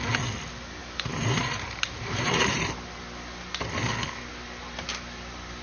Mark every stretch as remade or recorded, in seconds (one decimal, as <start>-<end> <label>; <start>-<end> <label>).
0.0-0.8 recorded; 0.8-2.7 remade; 2.7-5.6 recorded